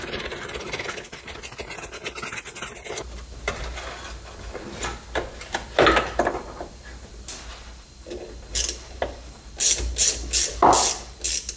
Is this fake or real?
real